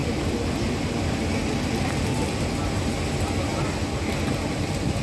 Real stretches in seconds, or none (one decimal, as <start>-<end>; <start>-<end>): 1.3-5.0